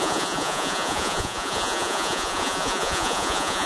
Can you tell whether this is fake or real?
fake